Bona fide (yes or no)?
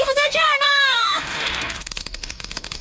no